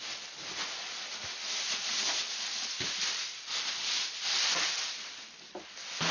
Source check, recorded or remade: recorded